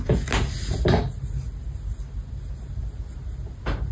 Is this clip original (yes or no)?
yes